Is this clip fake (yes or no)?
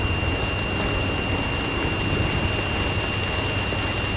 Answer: no